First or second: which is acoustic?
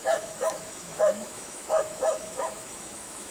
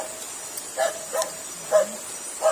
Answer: second